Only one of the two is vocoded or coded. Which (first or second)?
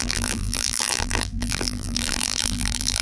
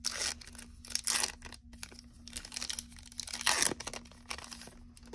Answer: first